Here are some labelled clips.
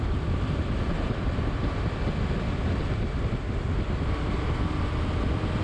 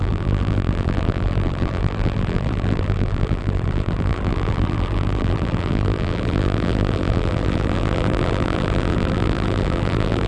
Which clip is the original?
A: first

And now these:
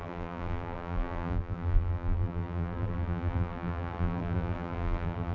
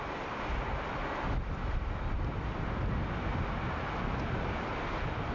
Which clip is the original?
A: second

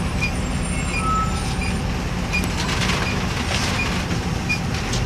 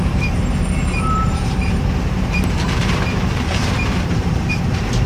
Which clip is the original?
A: first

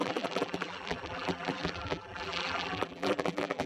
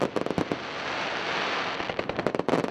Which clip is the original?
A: second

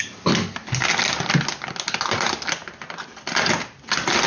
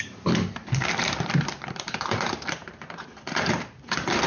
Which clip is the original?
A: first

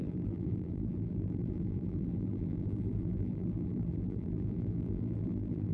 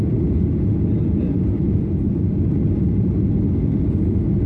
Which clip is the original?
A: second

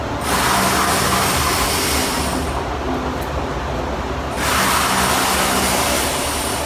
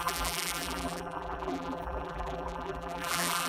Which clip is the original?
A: first